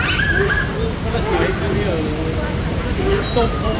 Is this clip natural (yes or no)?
yes